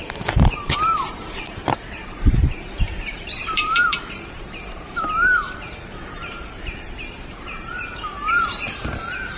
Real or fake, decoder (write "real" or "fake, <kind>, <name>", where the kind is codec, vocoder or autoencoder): fake, vocoder, BigVGAN v2